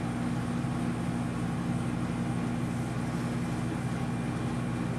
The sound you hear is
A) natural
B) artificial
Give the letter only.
A